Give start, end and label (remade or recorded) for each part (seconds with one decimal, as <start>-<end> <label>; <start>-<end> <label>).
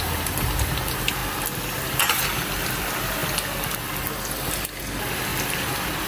0.0-5.3 recorded; 5.3-6.1 remade